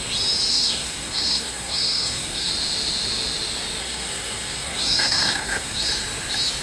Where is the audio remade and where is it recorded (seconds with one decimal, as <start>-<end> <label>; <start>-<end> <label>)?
0.0-0.5 recorded; 0.5-2.5 remade; 2.5-3.8 recorded; 3.8-5.9 remade; 5.9-6.6 recorded